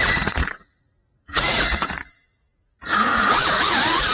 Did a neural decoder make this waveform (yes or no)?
yes